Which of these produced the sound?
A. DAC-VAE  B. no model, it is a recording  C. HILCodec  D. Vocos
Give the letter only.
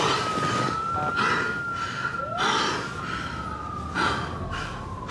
B